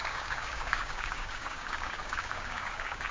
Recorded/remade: remade